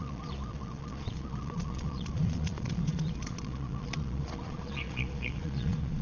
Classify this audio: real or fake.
fake